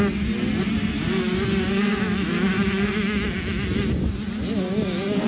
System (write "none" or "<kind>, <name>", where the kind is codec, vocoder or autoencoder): none